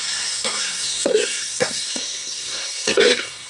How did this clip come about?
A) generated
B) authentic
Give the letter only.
A